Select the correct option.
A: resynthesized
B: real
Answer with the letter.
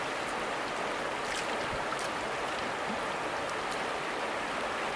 B